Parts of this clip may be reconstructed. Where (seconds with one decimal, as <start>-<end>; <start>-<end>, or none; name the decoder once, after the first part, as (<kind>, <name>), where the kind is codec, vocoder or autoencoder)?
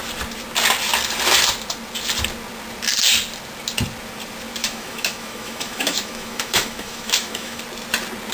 4.6-7.6 (autoencoder, DAC-VAE)